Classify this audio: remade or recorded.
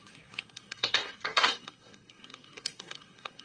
remade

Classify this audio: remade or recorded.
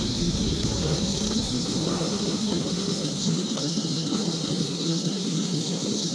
remade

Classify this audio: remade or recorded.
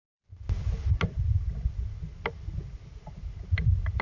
recorded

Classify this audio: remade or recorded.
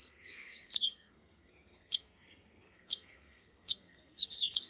remade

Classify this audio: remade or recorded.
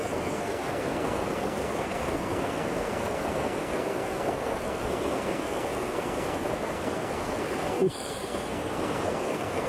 remade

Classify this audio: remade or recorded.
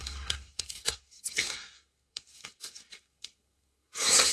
remade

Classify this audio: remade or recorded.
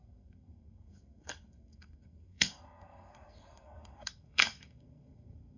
remade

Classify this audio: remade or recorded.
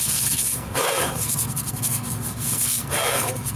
remade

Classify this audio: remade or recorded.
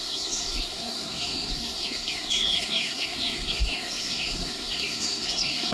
remade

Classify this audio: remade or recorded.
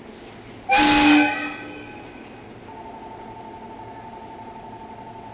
recorded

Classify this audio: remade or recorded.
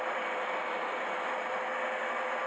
recorded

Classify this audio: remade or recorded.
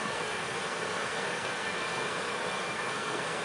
remade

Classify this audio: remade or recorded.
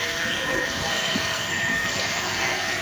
remade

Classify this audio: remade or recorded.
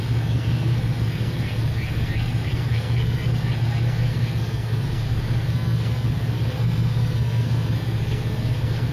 remade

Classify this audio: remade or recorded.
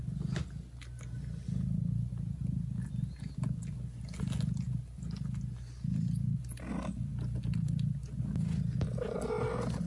recorded